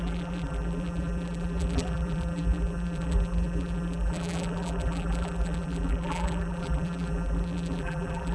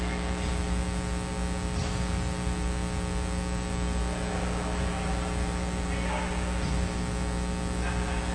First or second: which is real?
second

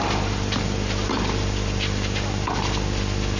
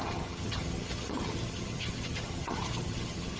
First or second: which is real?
first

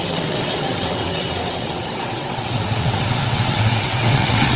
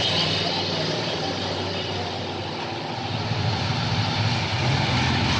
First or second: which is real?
second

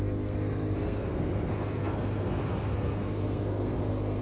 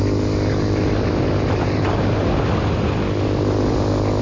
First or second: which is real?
second